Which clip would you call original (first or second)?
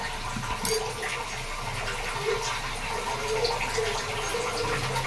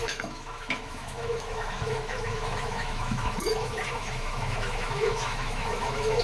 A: first